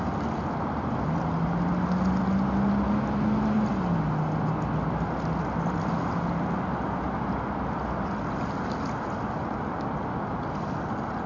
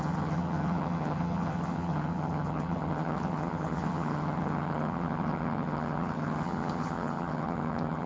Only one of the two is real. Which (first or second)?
first